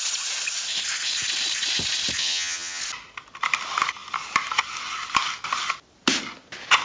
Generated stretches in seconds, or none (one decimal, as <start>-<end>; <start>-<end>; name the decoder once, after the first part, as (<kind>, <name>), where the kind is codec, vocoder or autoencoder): 2.2-2.8 (vocoder, HiFi-GAN)